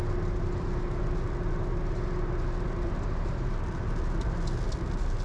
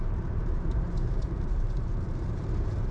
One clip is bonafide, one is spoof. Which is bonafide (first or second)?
first